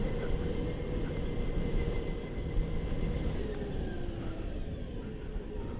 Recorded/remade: recorded